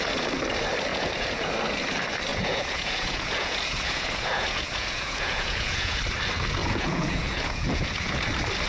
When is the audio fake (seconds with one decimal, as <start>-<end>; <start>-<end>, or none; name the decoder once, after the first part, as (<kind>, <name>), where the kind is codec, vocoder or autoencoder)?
0.9-1.5 (vocoder, Vocos); 2.3-6.0; 6.6-8.2